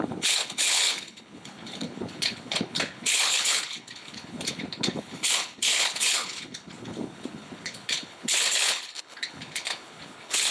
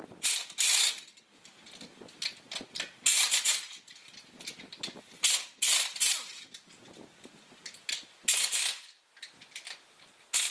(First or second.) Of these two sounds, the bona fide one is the second